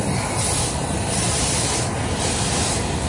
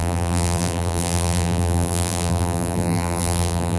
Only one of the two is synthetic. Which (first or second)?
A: second